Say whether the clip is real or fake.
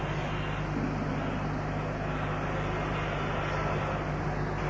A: real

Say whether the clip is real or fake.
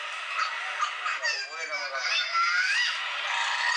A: real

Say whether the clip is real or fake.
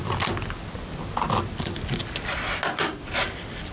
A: real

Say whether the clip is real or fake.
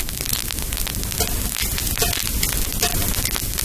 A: real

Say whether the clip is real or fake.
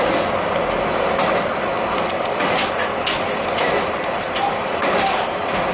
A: real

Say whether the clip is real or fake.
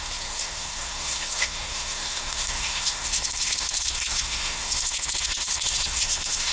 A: fake